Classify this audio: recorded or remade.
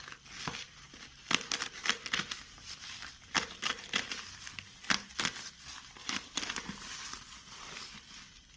remade